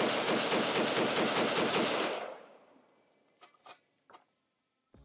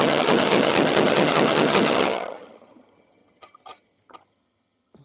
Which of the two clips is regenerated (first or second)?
second